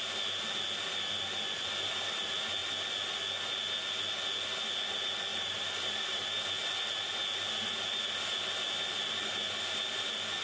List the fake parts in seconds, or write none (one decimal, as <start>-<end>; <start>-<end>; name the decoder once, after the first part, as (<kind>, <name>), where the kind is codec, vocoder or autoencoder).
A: 5.3-6.2 (vocoder, BigVGAN v2)